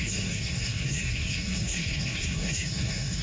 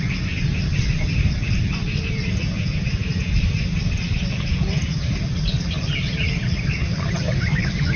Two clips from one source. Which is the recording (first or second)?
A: second